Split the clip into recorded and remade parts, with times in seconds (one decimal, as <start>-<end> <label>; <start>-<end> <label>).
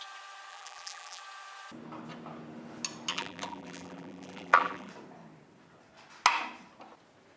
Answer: 0.0-0.5 recorded; 0.5-1.2 remade; 1.2-3.1 recorded; 3.1-4.9 remade; 4.9-7.4 recorded